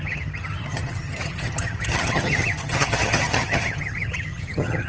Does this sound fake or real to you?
fake